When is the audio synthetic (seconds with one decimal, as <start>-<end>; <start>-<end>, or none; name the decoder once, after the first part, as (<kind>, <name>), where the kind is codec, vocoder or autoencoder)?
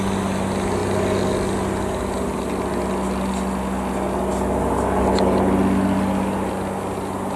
none